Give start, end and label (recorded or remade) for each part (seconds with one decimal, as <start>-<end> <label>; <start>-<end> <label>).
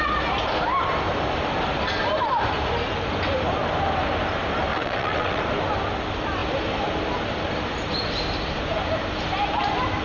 0.0-4.7 recorded; 4.7-5.4 remade; 5.4-10.0 recorded